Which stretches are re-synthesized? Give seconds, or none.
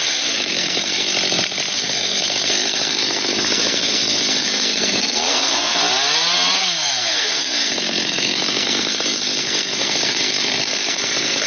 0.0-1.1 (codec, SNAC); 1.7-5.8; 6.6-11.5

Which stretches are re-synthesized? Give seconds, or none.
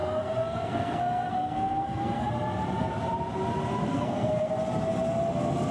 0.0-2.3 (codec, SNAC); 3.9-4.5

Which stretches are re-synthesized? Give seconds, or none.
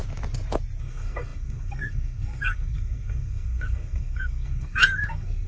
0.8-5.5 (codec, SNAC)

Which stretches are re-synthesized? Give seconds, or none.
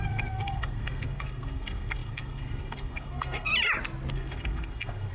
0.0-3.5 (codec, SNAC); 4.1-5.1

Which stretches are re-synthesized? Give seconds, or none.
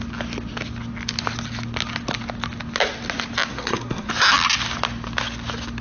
3.5-4.1 (codec, SNAC)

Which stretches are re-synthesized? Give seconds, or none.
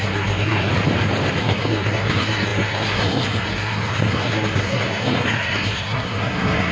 0.0-0.7 (codec, SNAC); 1.4-6.7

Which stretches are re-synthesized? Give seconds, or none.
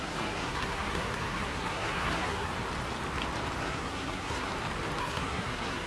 0.0-2.5 (codec, SNAC); 3.6-4.5; 5.0-5.9